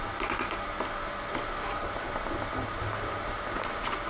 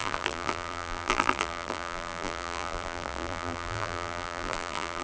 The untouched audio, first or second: first